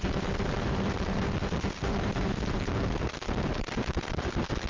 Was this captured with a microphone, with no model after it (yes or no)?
no